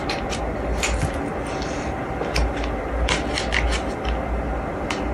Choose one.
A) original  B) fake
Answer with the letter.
A